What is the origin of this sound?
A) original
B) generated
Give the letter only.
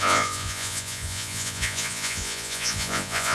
B